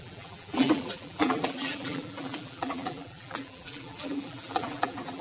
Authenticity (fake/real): fake